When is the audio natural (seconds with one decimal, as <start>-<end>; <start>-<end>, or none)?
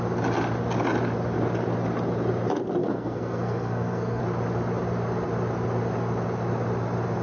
0.0-2.8; 4.2-7.2